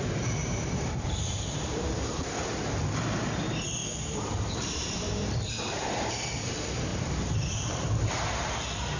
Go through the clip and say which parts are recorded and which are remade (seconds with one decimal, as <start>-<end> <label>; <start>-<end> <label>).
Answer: 0.0-0.4 recorded; 0.4-2.2 remade; 2.2-3.8 recorded; 3.8-6.1 remade; 6.1-6.9 recorded; 6.9-8.5 remade; 8.5-9.0 recorded